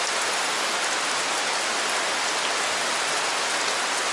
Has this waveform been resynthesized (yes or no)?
no